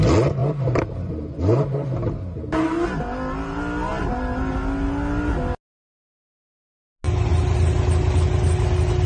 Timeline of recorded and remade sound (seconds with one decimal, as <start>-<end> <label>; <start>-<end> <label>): 0.0-0.4 recorded; 0.4-1.4 remade; 1.4-9.1 recorded